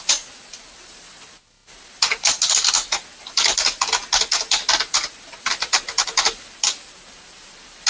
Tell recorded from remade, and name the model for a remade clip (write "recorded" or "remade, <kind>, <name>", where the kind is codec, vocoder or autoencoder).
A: recorded